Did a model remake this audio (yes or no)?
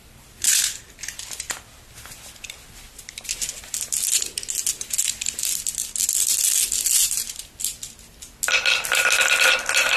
no